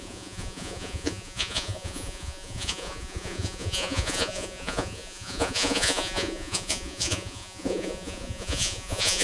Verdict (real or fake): fake